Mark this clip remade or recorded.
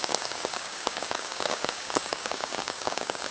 remade